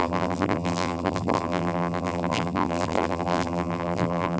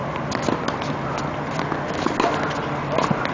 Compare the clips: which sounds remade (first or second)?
first